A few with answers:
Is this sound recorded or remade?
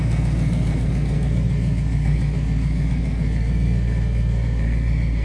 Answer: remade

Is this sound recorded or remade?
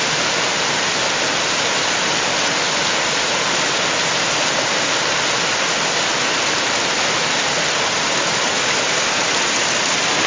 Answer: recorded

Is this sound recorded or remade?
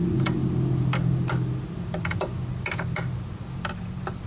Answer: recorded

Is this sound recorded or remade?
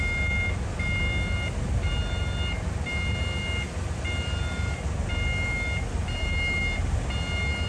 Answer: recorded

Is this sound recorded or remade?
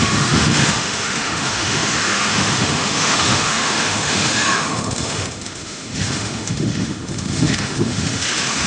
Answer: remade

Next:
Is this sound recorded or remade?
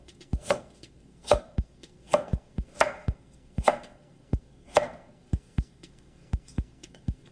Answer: remade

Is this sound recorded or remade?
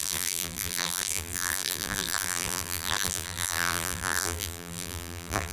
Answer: remade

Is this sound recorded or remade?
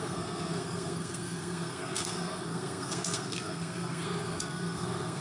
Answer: remade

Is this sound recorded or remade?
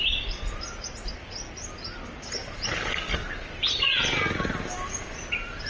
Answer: recorded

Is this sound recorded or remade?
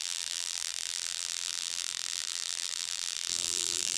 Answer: remade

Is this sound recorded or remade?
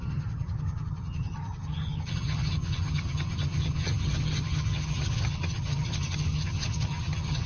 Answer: remade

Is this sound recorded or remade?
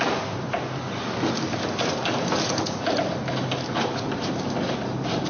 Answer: recorded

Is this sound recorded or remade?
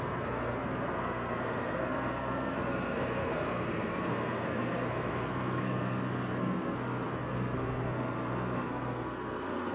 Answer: remade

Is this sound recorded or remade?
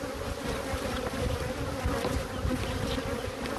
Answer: recorded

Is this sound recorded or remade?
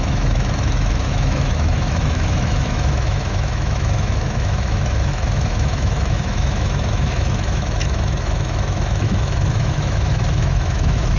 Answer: remade